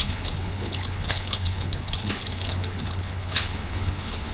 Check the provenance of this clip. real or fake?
fake